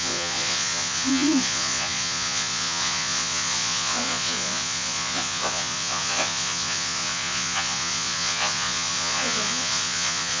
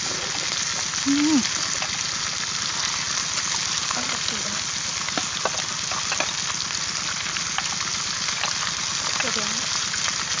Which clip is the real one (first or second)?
second